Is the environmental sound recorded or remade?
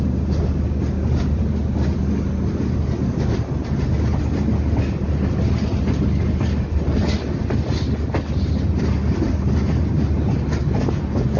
recorded